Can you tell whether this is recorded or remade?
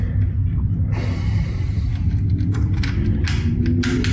recorded